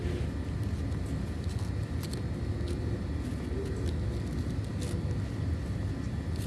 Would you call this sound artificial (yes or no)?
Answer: no